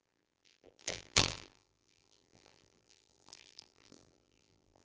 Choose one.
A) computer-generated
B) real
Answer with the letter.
A